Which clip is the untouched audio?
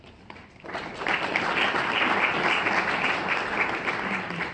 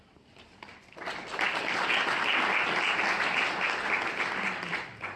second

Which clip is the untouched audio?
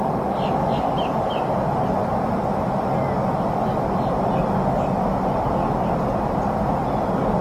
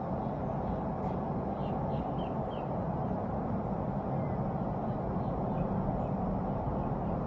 first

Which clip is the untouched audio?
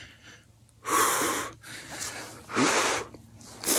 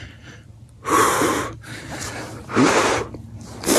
first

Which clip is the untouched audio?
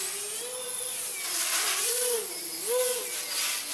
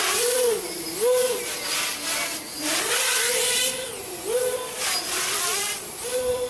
first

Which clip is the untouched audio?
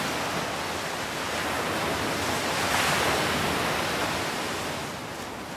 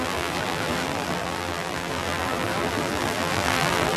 first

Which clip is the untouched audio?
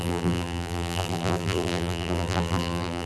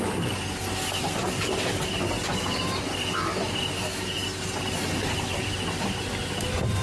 second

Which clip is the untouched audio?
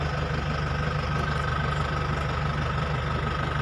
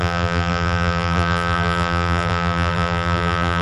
first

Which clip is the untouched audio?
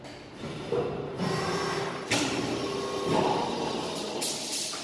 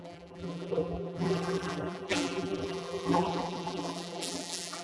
first